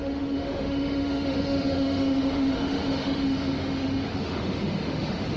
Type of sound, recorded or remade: remade